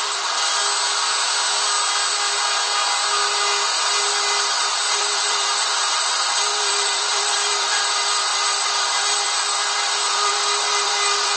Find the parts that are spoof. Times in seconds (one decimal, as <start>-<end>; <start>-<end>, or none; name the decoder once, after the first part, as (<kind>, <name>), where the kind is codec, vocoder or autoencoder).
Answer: 0.0-0.6 (vocoder, BigVGAN v2); 4.9-11.4